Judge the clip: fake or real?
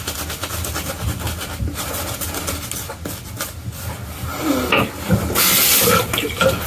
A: real